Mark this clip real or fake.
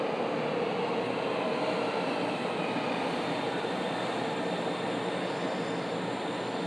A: real